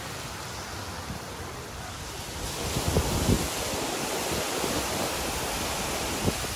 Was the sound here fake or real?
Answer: real